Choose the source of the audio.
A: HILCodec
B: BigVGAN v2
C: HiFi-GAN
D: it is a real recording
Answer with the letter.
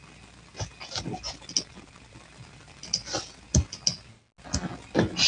D